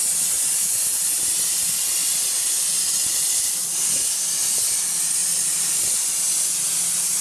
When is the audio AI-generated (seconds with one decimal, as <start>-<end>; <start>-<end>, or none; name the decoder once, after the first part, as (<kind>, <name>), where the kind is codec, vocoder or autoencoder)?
2.0-3.9 (vocoder, BigVGAN v2); 5.2-6.5